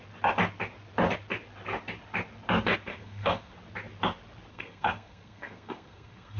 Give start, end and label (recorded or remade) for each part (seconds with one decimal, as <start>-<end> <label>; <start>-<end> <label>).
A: 0.0-2.9 recorded; 2.9-3.5 remade; 3.5-4.5 recorded; 4.5-6.4 remade

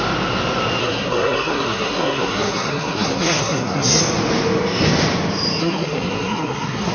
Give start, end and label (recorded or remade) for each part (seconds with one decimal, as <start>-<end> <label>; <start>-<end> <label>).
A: 0.0-0.8 recorded; 0.8-4.0 remade; 4.0-5.6 recorded; 5.6-6.9 remade

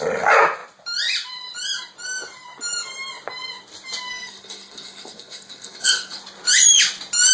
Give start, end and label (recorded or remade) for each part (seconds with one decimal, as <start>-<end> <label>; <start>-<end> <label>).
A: 0.0-4.1 recorded; 4.1-6.2 remade; 6.2-7.3 recorded

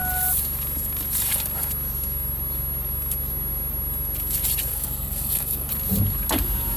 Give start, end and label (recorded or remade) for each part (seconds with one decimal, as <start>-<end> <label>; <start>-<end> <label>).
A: 0.0-4.7 recorded; 4.7-5.7 remade; 5.7-6.8 recorded

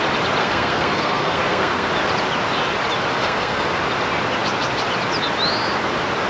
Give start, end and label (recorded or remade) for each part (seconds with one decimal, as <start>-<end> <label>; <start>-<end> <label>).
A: 0.0-0.4 recorded; 0.4-1.9 remade; 1.9-3.1 recorded; 3.1-3.8 remade; 3.8-6.3 recorded